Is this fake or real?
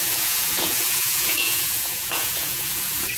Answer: fake